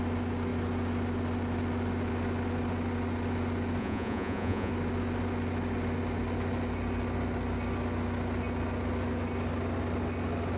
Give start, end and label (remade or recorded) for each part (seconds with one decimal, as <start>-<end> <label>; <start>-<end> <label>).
0.0-3.8 recorded; 3.8-4.7 remade; 4.7-10.6 recorded

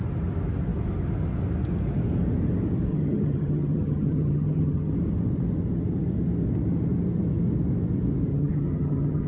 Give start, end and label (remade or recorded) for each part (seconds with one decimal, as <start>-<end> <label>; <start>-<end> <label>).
0.0-2.9 recorded; 2.9-4.9 remade; 4.9-8.3 recorded; 8.3-9.3 remade

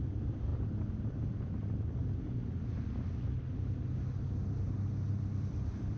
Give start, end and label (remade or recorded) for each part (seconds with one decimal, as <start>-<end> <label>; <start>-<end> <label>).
0.0-2.0 remade; 2.0-5.1 recorded; 5.1-6.0 remade

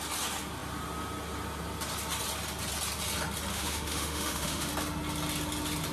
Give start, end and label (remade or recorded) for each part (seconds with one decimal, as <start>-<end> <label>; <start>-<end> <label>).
0.0-3.5 recorded; 3.5-4.7 remade; 4.7-5.9 recorded

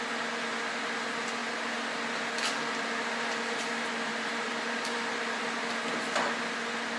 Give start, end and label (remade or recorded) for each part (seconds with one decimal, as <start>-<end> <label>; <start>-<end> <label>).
0.0-4.1 recorded; 4.1-5.0 remade; 5.0-7.0 recorded